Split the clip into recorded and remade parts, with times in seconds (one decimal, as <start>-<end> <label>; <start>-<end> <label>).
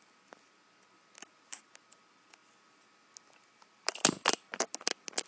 0.0-5.3 recorded